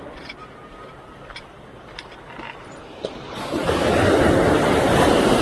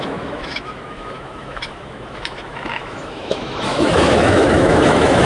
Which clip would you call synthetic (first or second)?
second